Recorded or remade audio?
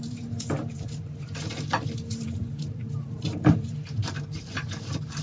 remade